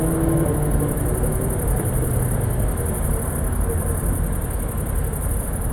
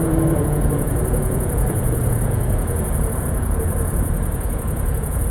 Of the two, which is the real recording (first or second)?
first